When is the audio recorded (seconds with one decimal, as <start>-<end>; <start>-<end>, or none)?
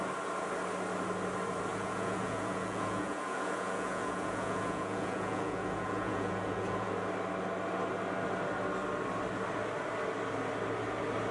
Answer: 0.0-1.7; 6.9-11.3